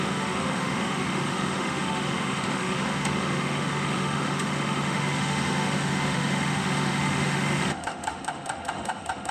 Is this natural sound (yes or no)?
no